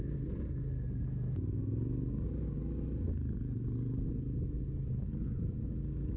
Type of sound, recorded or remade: recorded